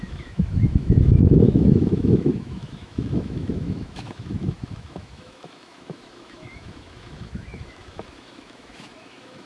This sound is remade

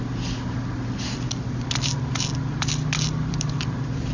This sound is recorded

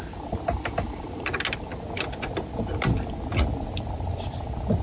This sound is recorded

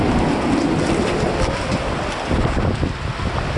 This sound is recorded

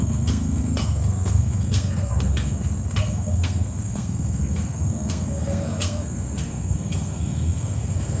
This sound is remade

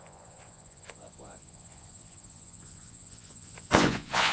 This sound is remade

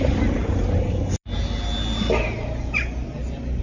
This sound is recorded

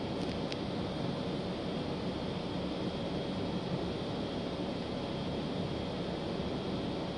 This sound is recorded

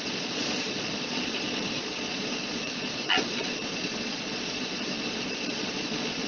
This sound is remade